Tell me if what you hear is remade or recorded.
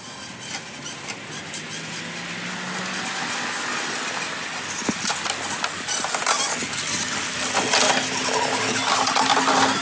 recorded